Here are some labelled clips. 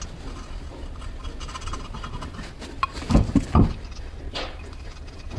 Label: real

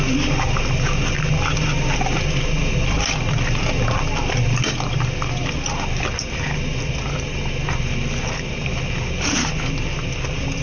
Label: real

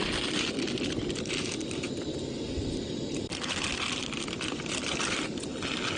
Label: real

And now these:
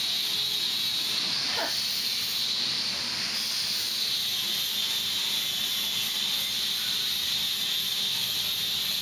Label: real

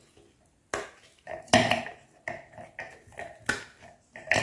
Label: real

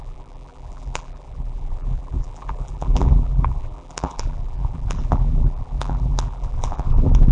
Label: fake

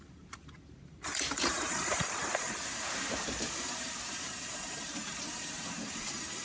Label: fake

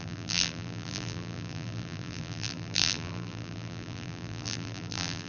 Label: fake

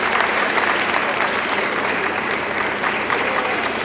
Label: fake